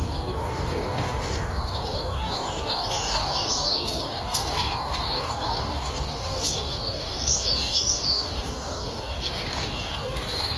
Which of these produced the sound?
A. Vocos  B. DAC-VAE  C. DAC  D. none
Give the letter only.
C